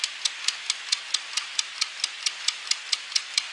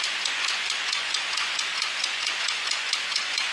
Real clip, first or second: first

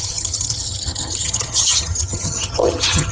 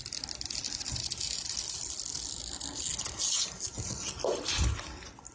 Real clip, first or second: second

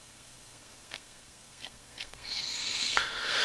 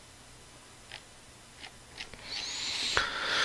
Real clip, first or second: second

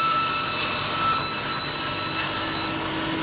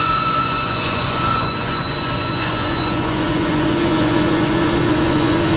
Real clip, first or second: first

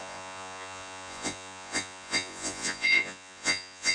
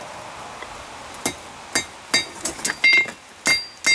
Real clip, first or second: second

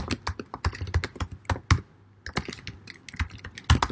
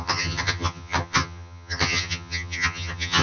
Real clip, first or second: first